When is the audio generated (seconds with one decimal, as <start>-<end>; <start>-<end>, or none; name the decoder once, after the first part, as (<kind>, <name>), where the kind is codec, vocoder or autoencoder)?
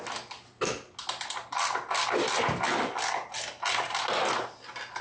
none